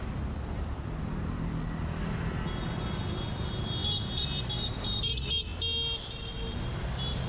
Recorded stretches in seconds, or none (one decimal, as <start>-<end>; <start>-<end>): 0.0-3.8; 4.5-7.3